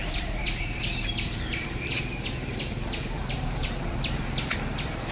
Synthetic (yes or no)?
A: yes